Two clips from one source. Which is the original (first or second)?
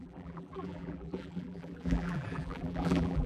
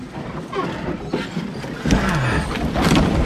second